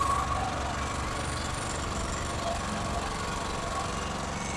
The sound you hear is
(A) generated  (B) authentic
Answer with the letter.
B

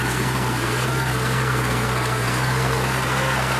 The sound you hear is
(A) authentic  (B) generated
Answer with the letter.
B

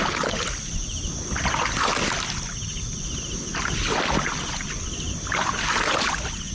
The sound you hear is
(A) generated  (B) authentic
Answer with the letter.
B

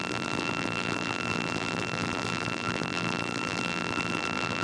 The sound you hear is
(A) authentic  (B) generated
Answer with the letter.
B